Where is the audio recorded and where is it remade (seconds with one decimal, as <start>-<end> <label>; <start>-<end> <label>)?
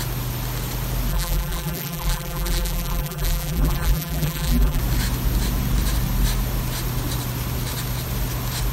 0.0-1.1 recorded; 1.1-4.8 remade; 4.8-8.7 recorded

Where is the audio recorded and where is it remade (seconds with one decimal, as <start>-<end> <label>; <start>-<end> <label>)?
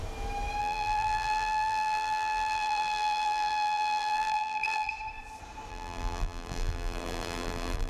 0.0-0.6 recorded; 0.6-4.9 remade; 4.9-5.7 recorded; 5.7-7.9 remade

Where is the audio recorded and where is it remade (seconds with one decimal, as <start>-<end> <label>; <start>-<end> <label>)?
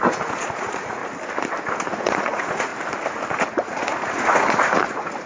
0.0-1.0 remade; 1.0-2.0 recorded; 2.0-2.7 remade; 2.7-3.5 recorded; 3.5-5.3 remade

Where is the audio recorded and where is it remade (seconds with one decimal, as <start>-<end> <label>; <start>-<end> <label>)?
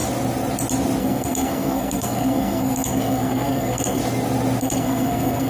0.0-1.0 recorded; 1.0-4.0 remade; 4.0-4.6 recorded; 4.6-5.5 remade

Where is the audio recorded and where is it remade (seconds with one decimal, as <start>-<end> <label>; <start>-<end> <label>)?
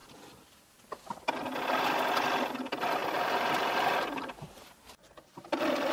0.0-3.0 recorded; 3.0-5.9 remade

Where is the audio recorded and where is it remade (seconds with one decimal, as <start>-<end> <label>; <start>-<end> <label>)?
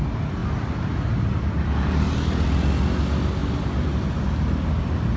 0.0-5.2 recorded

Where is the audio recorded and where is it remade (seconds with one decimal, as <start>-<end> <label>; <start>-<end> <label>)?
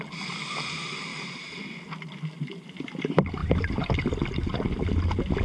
0.0-1.1 recorded; 1.1-1.6 remade; 1.6-3.4 recorded; 3.4-3.9 remade; 3.9-5.4 recorded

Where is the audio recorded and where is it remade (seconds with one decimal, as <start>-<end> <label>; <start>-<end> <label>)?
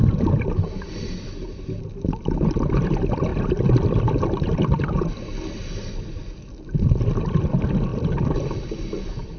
0.0-7.9 recorded; 7.9-9.4 remade